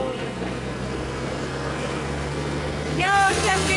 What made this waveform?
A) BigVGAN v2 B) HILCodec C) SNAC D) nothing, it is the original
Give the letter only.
C